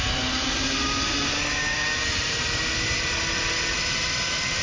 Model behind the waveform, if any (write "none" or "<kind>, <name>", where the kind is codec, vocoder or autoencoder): none